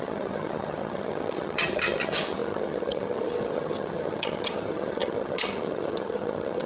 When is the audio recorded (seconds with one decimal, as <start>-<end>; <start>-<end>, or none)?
none